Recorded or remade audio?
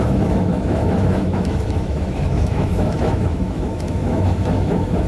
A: remade